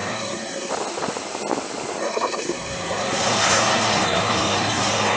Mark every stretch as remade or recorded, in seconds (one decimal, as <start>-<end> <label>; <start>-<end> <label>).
0.0-0.7 remade; 0.7-2.0 recorded; 2.0-5.2 remade